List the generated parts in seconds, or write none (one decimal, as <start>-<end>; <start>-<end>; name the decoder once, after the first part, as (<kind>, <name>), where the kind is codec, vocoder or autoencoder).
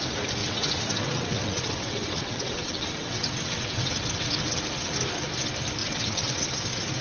0.4-4.6 (vocoder, WaveNeXt); 5.8-6.5